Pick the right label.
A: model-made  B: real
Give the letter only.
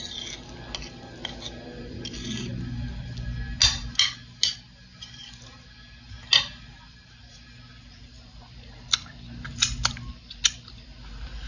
B